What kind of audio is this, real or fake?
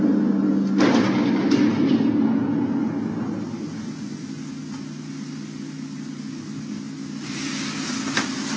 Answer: real